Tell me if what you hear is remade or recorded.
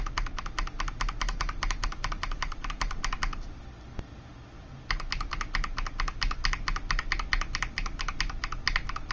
recorded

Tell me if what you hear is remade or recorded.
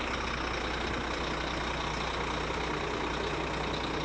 recorded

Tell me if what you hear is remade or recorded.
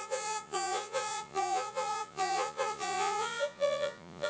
remade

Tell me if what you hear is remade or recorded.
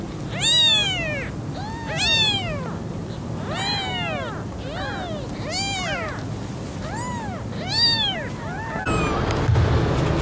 recorded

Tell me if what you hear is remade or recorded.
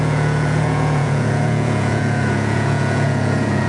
remade